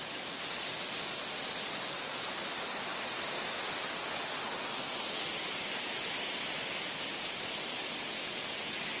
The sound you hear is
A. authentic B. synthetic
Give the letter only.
A